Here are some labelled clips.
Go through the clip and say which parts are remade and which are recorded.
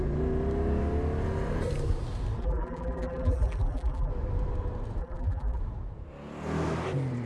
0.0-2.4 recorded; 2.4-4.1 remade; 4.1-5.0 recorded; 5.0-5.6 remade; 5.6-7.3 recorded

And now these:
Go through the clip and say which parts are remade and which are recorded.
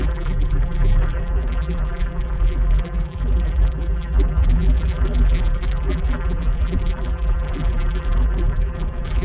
0.0-9.2 remade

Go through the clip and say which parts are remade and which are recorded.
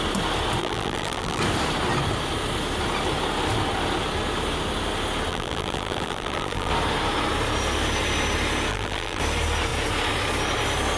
0.0-0.6 recorded; 0.6-1.4 remade; 1.4-5.3 recorded; 5.3-6.7 remade; 6.7-8.7 recorded; 8.7-9.2 remade; 9.2-11.0 recorded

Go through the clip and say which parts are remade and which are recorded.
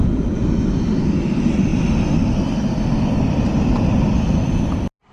0.0-5.1 recorded